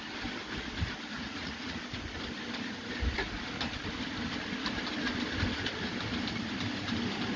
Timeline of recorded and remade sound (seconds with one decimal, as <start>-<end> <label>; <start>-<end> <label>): 0.0-1.1 recorded; 1.1-1.8 remade; 1.8-7.4 recorded